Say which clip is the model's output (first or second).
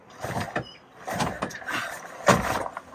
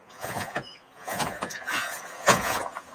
second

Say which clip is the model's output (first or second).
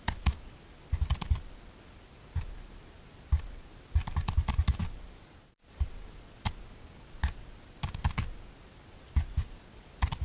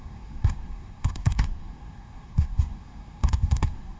second